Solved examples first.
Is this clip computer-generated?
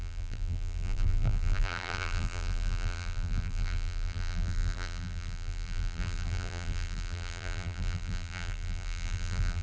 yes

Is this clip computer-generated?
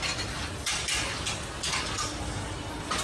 no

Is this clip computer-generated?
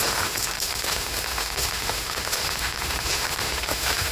yes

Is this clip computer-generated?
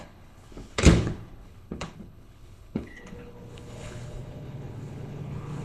yes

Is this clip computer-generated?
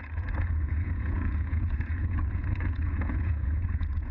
yes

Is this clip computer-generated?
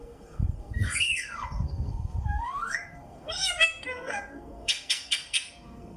yes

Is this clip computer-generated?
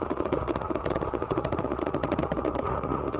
yes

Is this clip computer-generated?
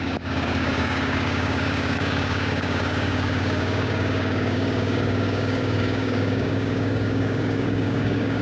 yes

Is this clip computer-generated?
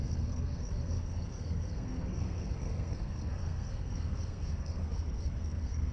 yes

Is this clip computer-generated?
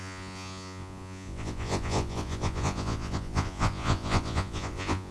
yes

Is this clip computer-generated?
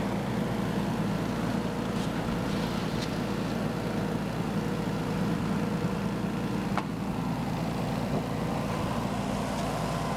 no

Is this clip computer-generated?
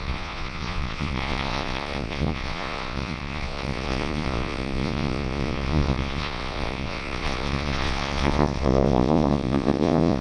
yes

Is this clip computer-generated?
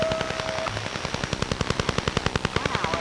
no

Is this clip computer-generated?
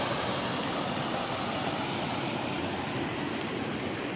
no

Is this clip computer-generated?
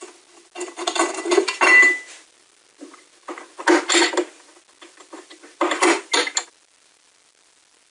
no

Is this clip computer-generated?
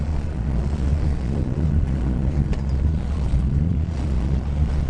yes